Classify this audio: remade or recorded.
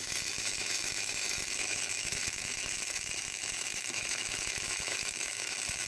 remade